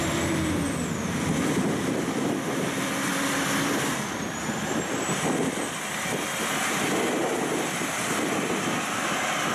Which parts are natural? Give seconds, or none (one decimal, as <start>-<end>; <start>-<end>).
0.0-9.5